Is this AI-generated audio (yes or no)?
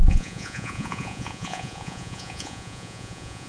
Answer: yes